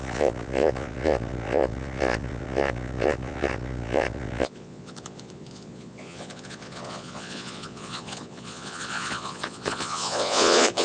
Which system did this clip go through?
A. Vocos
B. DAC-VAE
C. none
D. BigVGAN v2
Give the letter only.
A